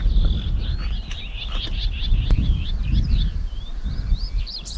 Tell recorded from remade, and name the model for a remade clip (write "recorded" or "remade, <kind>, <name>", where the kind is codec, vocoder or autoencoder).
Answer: recorded